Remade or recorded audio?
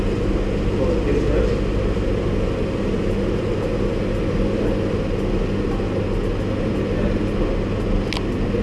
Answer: recorded